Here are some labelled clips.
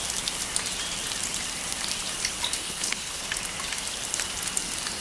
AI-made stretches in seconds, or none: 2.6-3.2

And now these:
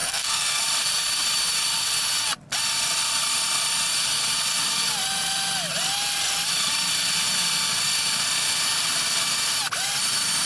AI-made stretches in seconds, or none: 0.0-0.6

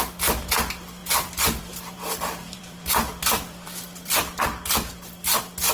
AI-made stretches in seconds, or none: 1.0-4.4

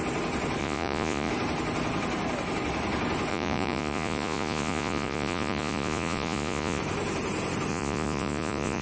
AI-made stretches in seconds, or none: 0.6-1.3; 3.3-6.8; 7.7-8.8

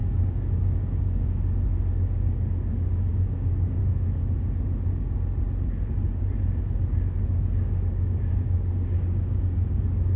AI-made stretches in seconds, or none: 0.0-3.8; 7.3-10.2

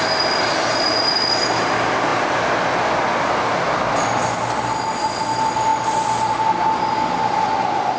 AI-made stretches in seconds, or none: none

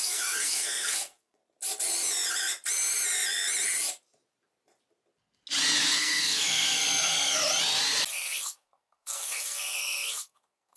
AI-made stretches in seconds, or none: 0.0-1.4; 5.8-7.4; 8.1-10.8

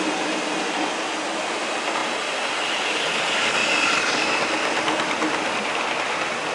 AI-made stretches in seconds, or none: 3.6-4.4